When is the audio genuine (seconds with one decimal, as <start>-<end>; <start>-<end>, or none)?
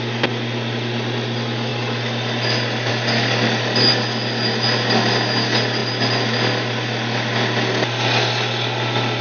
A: 0.0-9.2